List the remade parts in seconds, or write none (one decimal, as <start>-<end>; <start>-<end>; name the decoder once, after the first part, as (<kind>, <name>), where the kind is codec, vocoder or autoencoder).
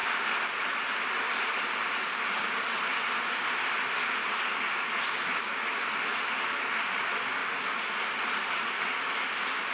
none